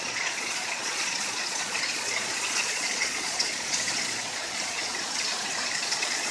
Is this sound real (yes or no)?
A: no